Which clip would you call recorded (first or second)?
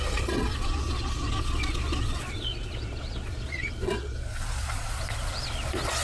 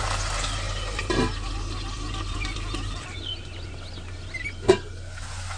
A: second